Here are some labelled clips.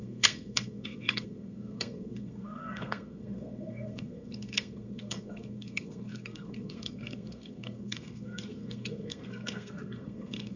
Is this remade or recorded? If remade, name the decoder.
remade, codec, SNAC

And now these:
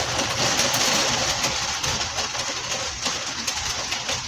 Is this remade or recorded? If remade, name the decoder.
recorded